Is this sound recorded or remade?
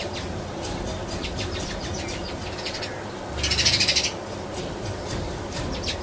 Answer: recorded